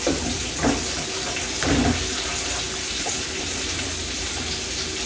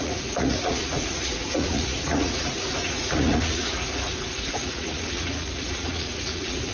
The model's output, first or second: second